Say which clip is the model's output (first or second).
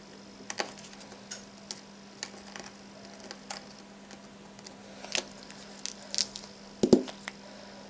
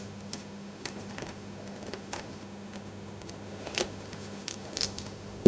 second